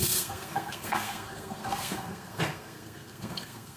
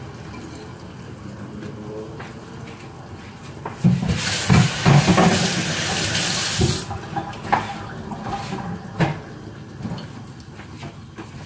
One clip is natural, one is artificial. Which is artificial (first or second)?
first